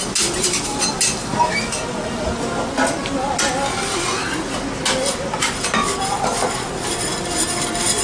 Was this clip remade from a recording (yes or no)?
no